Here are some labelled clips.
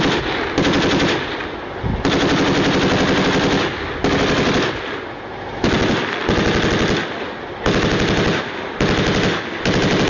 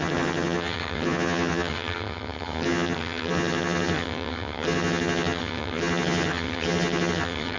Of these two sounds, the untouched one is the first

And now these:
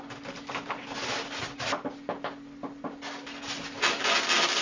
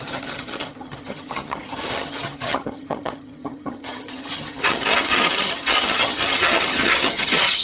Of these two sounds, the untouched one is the first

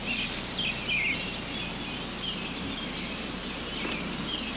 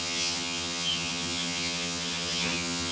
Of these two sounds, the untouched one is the first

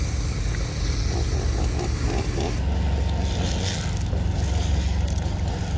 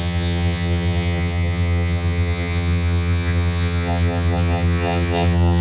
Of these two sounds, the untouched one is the first